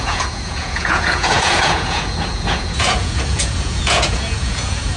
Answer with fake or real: fake